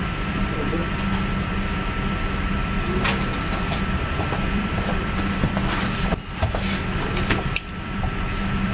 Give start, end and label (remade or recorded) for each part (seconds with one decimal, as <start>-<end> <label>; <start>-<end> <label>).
0.0-0.8 remade; 0.8-3.6 recorded; 3.6-8.7 remade